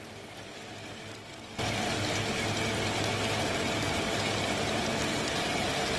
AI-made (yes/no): no